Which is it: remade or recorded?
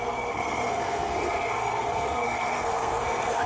remade